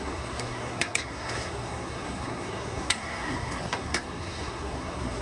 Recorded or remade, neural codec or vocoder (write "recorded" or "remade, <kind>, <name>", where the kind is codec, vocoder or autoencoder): remade, codec, SNAC